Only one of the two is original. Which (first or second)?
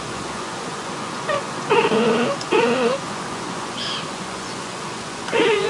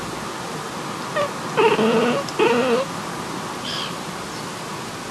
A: second